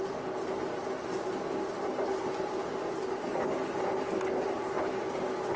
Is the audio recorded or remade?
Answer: recorded